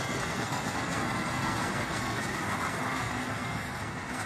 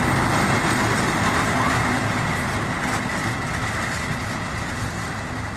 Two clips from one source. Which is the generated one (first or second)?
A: first